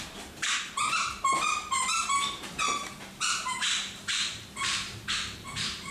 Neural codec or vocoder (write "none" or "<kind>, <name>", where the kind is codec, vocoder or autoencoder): vocoder, BigVGAN v2